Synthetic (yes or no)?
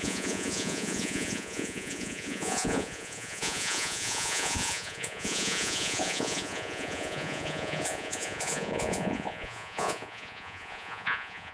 yes